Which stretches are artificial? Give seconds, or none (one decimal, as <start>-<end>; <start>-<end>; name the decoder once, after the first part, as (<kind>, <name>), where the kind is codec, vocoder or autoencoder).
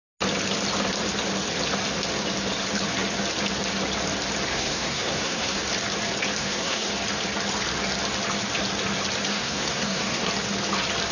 4.5-5.6 (codec, SNAC); 6.4-6.9; 9.3-10.3